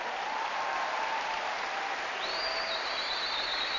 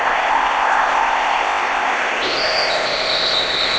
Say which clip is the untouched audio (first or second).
first